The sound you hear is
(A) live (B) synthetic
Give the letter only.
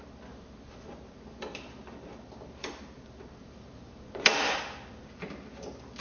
B